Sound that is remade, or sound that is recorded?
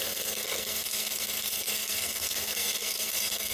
remade